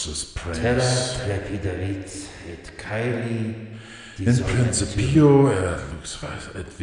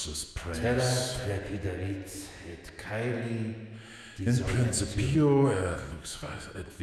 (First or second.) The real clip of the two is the first